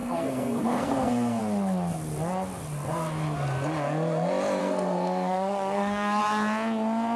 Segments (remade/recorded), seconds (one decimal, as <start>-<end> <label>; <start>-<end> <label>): 0.0-1.4 remade; 1.4-4.6 recorded; 4.6-6.2 remade; 6.2-7.2 recorded